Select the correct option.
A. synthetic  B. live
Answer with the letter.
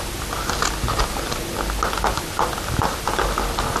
B